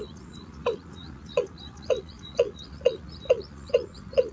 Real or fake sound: fake